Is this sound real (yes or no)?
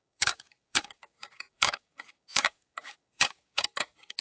no